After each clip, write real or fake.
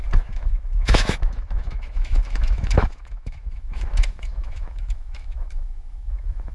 fake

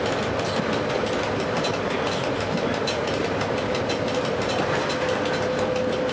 real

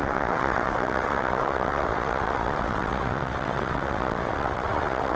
fake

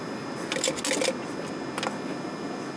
real